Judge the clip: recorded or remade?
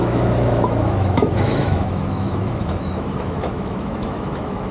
remade